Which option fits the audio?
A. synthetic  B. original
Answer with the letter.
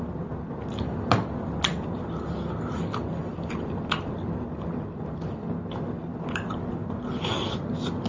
B